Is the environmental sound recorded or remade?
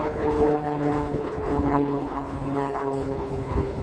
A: remade